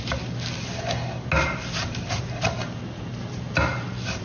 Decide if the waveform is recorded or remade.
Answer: recorded